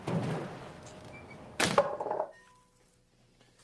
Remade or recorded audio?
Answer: recorded